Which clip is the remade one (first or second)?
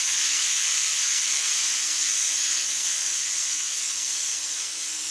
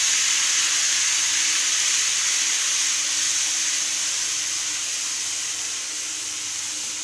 first